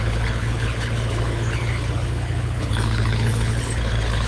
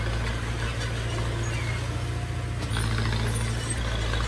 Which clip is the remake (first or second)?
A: first